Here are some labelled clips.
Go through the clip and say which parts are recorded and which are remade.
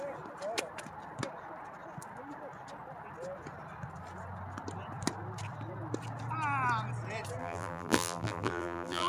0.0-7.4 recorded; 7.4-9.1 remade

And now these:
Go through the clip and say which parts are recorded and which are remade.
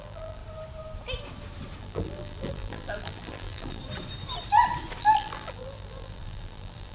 0.0-0.4 remade; 0.4-1.8 recorded; 1.8-3.8 remade; 3.8-5.0 recorded; 5.0-6.9 remade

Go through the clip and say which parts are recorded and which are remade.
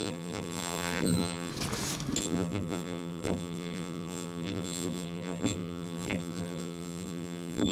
0.0-1.5 remade; 1.5-2.2 recorded; 2.2-7.7 remade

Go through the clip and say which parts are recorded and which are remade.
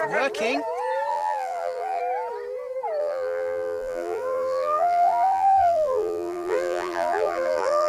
0.0-1.1 recorded; 1.1-2.0 remade; 2.0-3.0 recorded; 3.0-7.9 remade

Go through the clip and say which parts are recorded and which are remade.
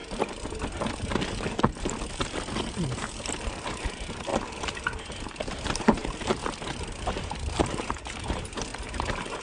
0.0-2.1 recorded; 2.1-4.3 remade; 4.3-5.6 recorded; 5.6-9.4 remade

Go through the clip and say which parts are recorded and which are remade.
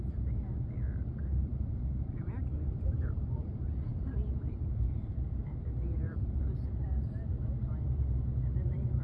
0.0-9.0 remade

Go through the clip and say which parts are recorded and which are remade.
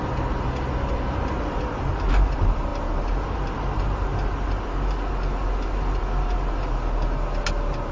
0.0-7.9 recorded